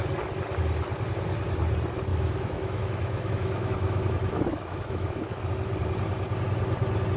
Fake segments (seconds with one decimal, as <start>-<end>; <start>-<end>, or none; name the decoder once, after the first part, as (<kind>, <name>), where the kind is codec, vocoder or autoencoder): 2.1-5.5 (autoencoder, DAC-VAE)